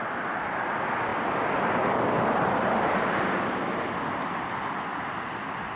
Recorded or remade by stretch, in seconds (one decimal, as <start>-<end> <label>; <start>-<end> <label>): 0.0-5.8 recorded